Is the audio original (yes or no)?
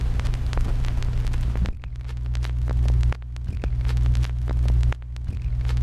yes